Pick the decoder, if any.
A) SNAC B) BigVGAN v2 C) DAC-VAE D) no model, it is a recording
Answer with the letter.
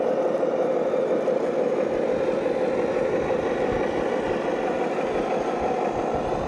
D